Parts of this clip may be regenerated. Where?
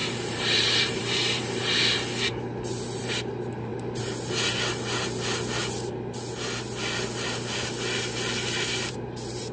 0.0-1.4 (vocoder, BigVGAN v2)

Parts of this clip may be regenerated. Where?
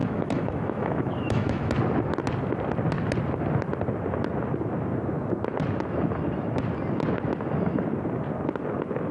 0.0-1.7 (autoencoder, DAC-VAE)